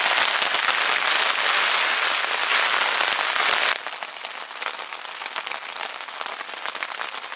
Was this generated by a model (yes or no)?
no